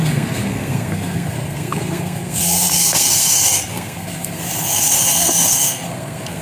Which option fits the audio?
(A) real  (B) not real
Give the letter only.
B